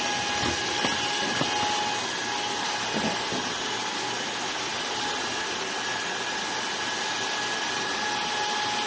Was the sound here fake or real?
real